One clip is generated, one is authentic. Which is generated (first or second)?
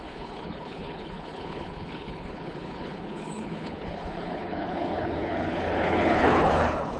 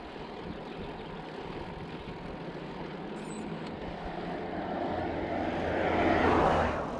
first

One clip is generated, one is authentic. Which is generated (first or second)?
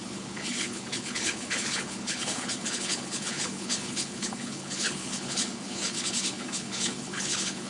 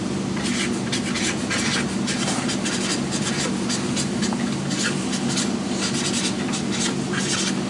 first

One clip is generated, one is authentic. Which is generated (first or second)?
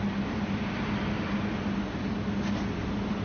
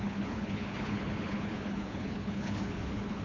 second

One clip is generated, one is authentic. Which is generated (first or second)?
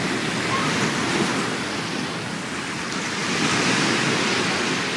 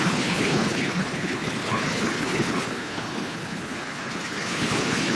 second